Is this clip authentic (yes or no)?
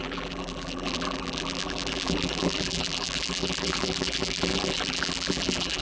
no